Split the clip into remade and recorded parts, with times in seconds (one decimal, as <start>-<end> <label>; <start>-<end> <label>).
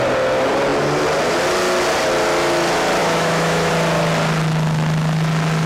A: 0.0-3.0 recorded; 3.0-3.7 remade; 3.7-5.7 recorded